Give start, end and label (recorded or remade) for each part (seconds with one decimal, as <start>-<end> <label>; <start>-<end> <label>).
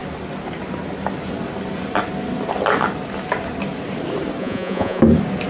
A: 0.0-4.4 recorded; 4.4-5.0 remade; 5.0-5.5 recorded